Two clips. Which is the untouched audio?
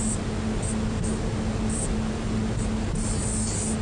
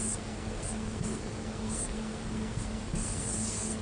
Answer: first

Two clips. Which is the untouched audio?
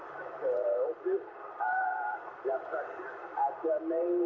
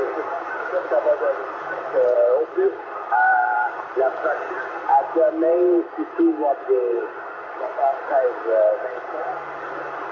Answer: second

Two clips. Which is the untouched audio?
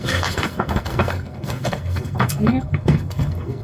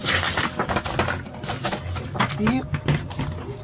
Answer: second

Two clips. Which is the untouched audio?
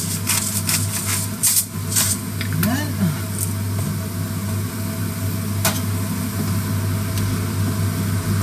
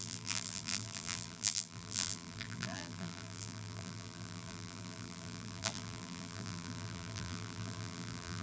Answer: first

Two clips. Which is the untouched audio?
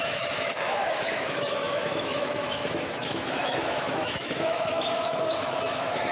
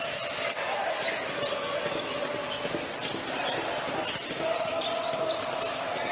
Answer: second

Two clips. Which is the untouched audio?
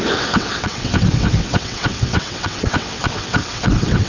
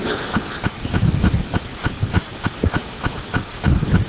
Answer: second